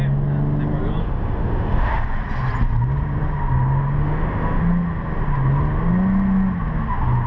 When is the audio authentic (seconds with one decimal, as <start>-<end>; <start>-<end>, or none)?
0.0-1.0; 1.9-4.0; 4.6-7.3